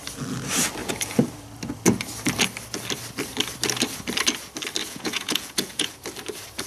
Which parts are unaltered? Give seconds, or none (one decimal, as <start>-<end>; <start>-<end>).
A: 0.0-4.8; 5.9-6.7